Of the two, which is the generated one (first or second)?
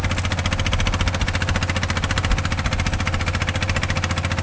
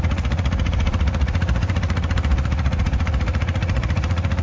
second